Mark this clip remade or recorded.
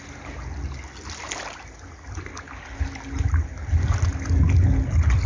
recorded